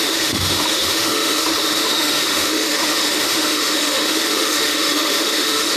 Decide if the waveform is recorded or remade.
remade